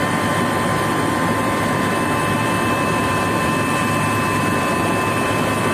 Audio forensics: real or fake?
fake